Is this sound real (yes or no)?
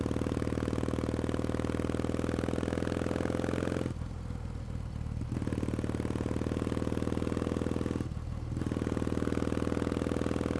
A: yes